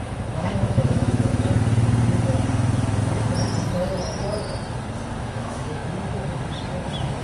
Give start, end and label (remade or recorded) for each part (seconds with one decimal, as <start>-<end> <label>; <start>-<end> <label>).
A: 0.0-1.3 remade; 1.3-5.2 recorded; 5.2-5.8 remade; 5.8-7.2 recorded